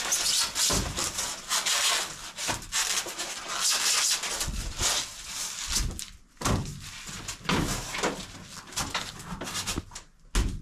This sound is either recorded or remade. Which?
recorded